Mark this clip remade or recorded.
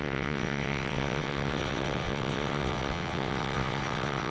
remade